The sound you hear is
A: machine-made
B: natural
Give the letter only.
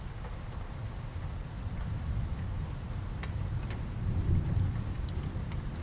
B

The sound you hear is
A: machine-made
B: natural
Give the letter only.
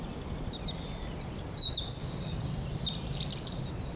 A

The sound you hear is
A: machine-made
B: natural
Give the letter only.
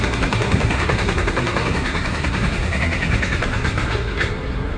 A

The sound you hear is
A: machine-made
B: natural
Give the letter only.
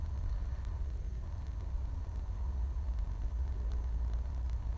B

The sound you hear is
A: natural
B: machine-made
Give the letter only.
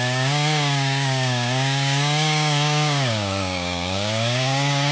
B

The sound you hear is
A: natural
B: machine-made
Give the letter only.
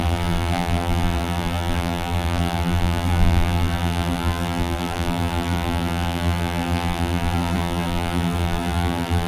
B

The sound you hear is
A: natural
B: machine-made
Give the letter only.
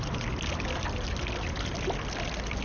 A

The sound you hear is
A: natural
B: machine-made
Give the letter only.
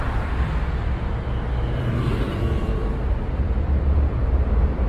B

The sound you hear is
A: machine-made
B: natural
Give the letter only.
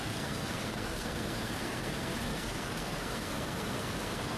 A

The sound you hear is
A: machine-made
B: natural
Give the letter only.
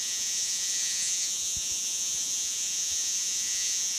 A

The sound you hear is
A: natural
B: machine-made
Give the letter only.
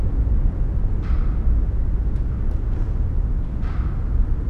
A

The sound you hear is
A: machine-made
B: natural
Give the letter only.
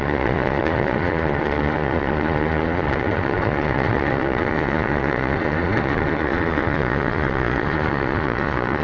A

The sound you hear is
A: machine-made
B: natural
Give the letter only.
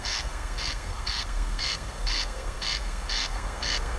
A